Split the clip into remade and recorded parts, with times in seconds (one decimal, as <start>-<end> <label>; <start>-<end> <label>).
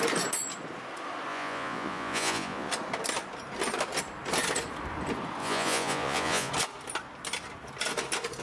0.0-1.3 recorded; 1.3-2.7 remade; 2.7-5.4 recorded; 5.4-6.5 remade; 6.5-8.4 recorded